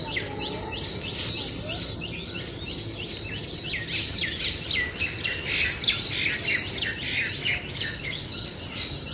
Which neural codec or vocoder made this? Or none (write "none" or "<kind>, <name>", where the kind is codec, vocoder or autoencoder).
none